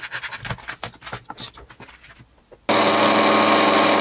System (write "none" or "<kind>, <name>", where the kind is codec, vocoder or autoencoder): none